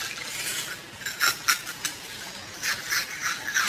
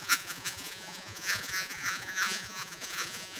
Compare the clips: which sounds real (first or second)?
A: first